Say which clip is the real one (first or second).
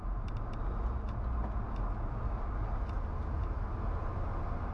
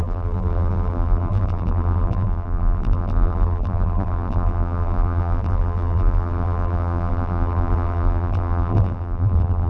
first